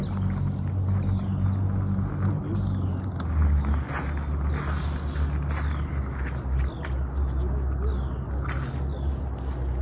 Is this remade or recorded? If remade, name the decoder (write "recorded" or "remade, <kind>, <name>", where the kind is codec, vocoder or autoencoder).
recorded